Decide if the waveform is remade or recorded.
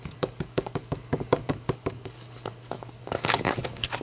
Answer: remade